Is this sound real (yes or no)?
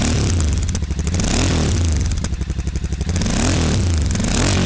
yes